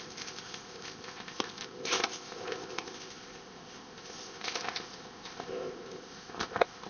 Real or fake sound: fake